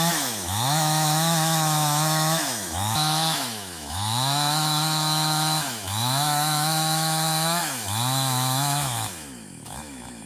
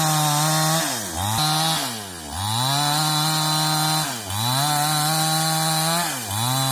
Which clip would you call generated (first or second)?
first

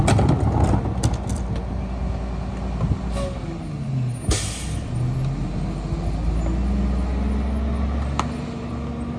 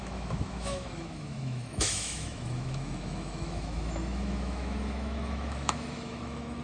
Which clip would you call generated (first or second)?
second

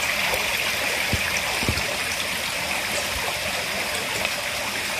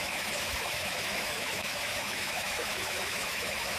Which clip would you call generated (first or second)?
second